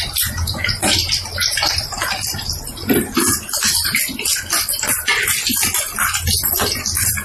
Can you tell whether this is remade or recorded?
recorded